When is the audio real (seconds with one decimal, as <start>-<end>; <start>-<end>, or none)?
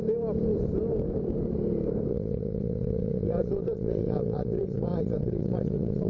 0.0-2.1